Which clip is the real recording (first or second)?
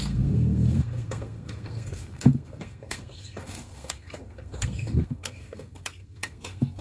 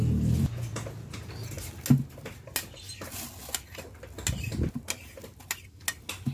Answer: second